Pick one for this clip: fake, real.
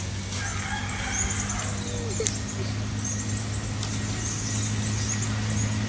real